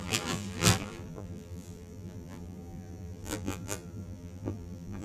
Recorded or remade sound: remade